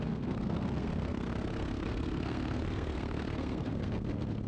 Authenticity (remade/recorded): remade